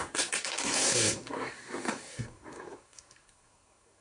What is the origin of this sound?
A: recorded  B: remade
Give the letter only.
B